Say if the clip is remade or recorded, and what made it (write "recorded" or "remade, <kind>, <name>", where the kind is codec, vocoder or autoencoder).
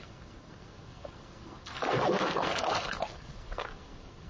remade, codec, SNAC